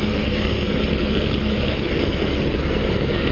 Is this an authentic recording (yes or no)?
no